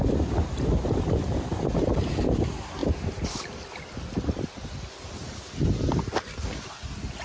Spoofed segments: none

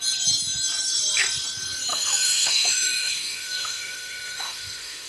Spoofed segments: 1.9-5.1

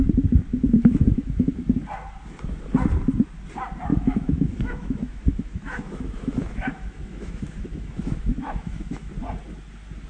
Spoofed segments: 0.5-1.5; 3.9-9.1

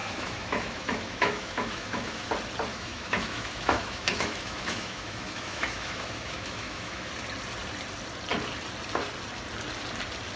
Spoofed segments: 0.0-2.3; 2.7-7.1

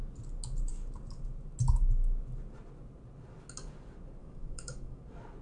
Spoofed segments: 4.2-5.0